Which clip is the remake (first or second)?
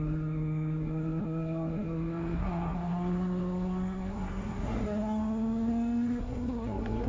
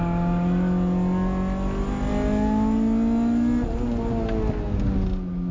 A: first